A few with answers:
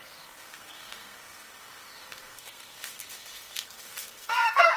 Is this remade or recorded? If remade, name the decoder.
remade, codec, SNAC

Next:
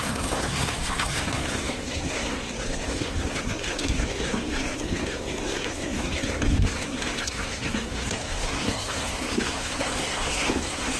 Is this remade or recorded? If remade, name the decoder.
remade, codec, SNAC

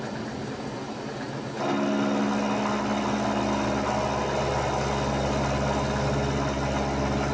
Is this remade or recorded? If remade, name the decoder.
recorded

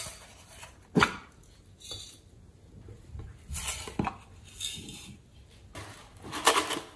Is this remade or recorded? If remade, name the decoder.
recorded